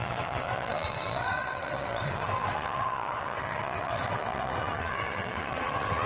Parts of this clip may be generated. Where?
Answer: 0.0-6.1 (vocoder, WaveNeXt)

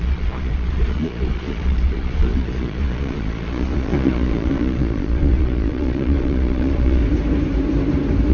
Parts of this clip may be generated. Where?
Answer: 0.0-7.0 (vocoder, Vocos)

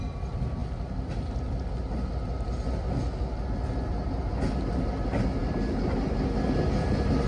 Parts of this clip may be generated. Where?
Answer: none

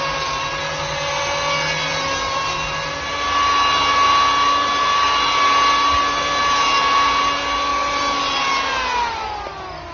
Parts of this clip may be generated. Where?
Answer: none

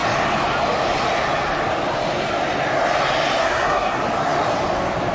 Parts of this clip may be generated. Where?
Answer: 3.4-4.0 (codec, SNAC)

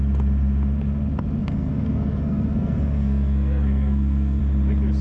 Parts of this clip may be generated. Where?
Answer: 1.4-4.4 (codec, SNAC)

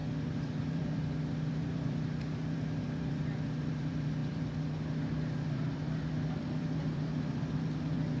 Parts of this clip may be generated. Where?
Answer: 0.0-8.2 (vocoder, BigVGAN v2)